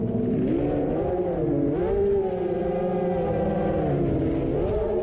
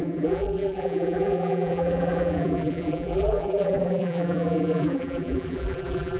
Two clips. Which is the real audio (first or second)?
first